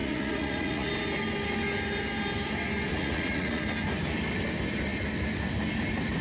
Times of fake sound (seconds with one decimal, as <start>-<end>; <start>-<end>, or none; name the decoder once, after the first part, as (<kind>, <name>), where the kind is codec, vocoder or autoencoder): 0.0-0.9 (vocoder, Vocos); 2.9-3.6

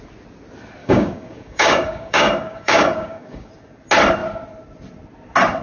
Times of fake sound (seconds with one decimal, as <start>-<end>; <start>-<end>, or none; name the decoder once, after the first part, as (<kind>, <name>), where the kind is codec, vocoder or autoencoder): 0.8-3.5 (codec, DAC)

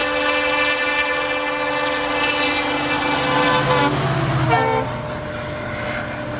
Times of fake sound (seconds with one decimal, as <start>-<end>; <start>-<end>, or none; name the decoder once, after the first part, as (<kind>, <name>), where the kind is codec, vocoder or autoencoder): none

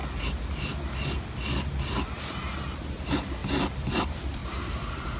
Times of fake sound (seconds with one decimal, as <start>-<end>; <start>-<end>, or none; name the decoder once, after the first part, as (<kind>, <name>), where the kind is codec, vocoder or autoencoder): 2.9-3.4 (vocoder, BigVGAN v2); 4.0-5.2

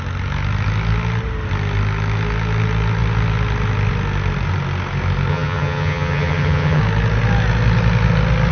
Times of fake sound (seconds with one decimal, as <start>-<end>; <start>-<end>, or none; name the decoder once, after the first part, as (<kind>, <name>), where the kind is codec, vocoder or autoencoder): 5.3-6.8 (vocoder, HiFi-GAN)

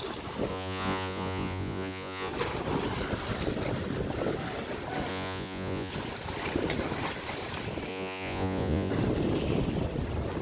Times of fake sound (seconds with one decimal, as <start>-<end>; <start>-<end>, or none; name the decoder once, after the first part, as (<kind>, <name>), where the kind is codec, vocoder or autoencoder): 0.5-2.3 (vocoder, Vocos); 5.1-5.9; 7.9-8.9

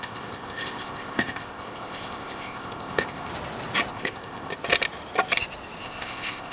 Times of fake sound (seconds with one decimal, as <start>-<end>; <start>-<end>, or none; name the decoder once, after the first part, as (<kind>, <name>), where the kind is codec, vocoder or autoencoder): 0.0-3.3 (codec, ZipCodec); 3.9-4.5; 5.8-6.5

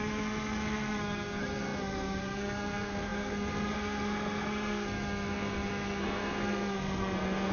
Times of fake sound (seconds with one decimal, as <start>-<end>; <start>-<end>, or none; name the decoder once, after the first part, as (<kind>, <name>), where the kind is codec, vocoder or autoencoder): 0.0-7.5 (codec, SNAC)